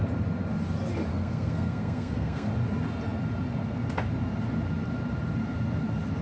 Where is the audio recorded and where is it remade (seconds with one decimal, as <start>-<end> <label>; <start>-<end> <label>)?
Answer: 0.0-1.1 recorded; 1.1-2.5 remade; 2.5-6.2 recorded